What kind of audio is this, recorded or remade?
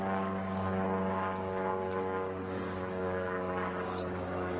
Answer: remade